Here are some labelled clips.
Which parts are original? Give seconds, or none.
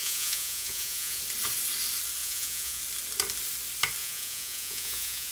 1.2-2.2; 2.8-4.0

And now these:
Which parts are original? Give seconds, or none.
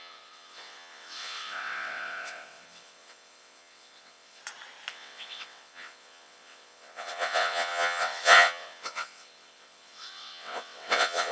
4.4-4.9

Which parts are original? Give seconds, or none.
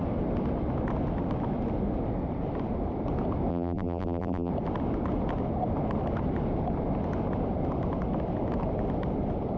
0.0-3.5; 4.5-9.6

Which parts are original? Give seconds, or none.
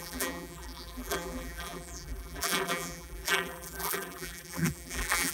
none